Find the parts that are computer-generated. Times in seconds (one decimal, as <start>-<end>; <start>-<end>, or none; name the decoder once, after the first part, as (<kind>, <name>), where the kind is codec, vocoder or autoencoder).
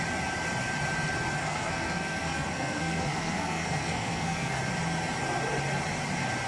1.4-4.6 (codec, SNAC)